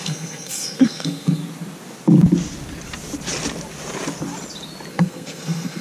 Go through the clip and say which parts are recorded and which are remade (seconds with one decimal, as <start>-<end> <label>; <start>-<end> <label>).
0.0-1.4 remade; 1.4-4.9 recorded; 4.9-5.8 remade